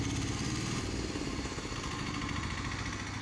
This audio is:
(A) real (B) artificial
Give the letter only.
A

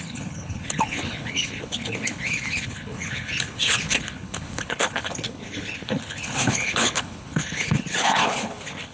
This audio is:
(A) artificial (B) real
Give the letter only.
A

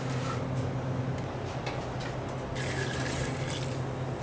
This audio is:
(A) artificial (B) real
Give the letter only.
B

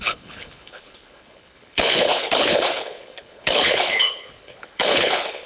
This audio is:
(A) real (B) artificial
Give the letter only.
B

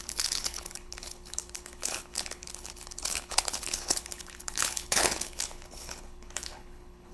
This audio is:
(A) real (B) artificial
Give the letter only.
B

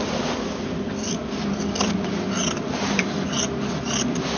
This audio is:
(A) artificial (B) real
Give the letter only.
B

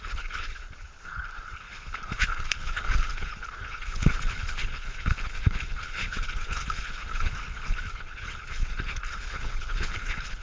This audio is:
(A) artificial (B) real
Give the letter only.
A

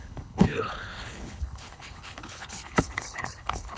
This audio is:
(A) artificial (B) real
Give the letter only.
A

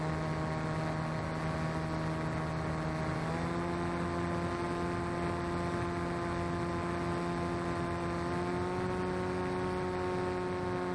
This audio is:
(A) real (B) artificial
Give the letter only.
A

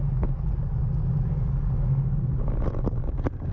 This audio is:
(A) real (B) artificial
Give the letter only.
A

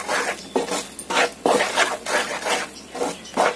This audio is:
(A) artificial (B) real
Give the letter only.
B